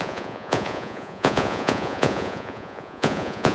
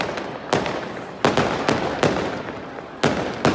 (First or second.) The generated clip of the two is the first